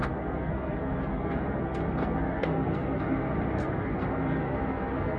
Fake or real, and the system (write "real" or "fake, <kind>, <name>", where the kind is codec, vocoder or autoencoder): fake, codec, SNAC